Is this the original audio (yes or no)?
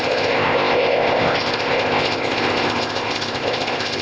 no